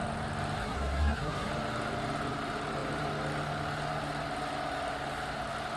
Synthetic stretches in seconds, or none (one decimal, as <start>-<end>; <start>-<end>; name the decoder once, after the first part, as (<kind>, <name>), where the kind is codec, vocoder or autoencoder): 0.6-1.5 (codec, SNAC)